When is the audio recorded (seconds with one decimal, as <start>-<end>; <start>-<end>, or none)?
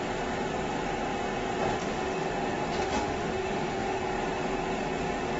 0.0-1.8; 2.3-2.7; 4.0-5.4